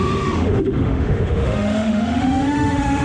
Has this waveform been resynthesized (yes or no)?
yes